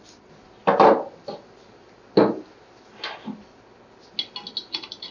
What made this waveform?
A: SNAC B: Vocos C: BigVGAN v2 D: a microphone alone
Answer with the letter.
D